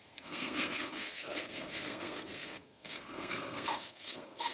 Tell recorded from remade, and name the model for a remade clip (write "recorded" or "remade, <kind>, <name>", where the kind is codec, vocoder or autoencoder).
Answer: remade, codec, SNAC